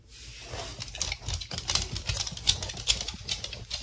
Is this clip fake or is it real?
real